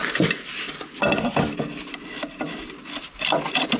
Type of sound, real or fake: real